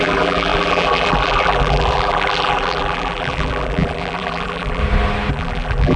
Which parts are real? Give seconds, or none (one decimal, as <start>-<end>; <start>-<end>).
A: 4.8-5.3